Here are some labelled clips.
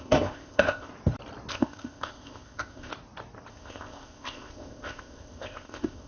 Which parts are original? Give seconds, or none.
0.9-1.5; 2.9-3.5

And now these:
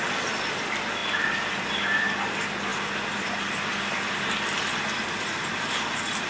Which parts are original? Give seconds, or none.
0.0-6.3

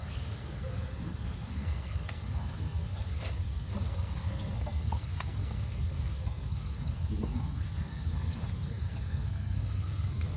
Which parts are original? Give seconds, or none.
none

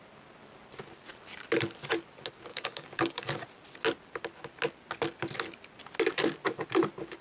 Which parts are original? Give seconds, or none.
0.0-2.5; 3.4-7.2

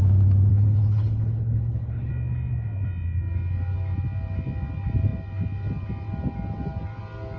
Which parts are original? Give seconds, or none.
0.0-0.5; 2.1-7.4

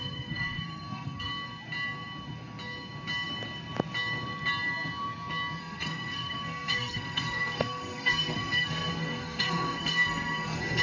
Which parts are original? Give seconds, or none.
1.3-5.6